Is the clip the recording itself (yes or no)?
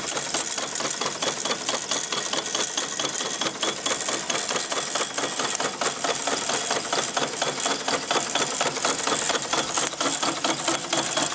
yes